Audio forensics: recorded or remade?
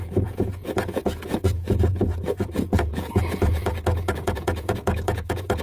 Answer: remade